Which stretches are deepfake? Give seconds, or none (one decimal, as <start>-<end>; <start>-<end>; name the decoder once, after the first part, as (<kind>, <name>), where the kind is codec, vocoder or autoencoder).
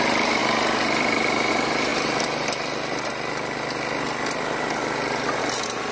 0.0-0.4 (vocoder, BigVGAN v2); 1.5-1.9; 5.4-5.9